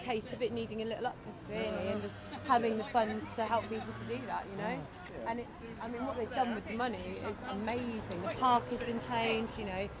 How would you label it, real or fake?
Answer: real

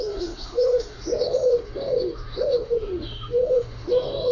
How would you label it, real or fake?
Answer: fake